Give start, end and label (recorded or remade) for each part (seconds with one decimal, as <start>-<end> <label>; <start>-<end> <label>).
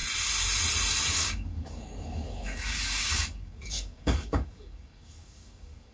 0.0-1.1 recorded; 1.1-5.9 remade